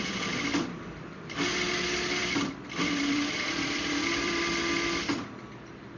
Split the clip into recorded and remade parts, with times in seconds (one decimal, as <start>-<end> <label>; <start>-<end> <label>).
0.0-2.2 recorded; 2.2-4.4 remade; 4.4-6.0 recorded